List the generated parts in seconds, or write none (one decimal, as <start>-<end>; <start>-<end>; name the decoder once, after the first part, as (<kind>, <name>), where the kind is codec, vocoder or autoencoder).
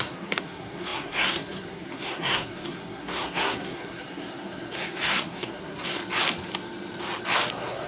0.0-6.0 (codec, SNAC); 7.5-7.9